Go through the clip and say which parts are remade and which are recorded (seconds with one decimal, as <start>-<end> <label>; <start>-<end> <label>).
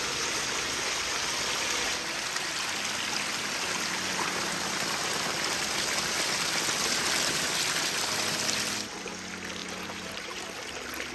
0.0-9.6 recorded; 9.6-10.4 remade; 10.4-11.1 recorded